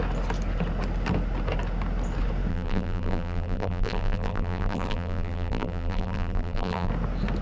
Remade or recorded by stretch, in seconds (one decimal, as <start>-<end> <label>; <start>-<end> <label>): 0.0-2.5 recorded; 2.5-6.9 remade; 6.9-7.4 recorded